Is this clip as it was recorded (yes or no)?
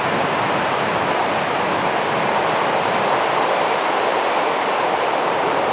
yes